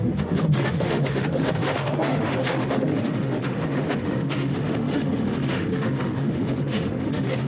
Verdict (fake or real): fake